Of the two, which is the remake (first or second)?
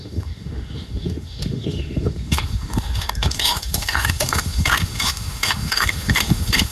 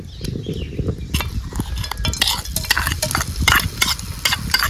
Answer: first